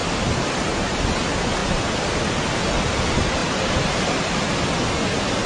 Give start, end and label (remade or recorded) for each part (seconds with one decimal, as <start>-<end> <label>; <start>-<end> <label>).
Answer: 0.0-1.1 remade; 1.1-1.6 recorded; 1.6-2.3 remade; 2.3-3.4 recorded; 3.4-4.0 remade; 4.0-5.5 recorded